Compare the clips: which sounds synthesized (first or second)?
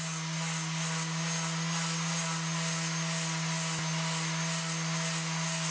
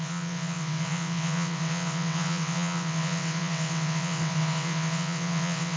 second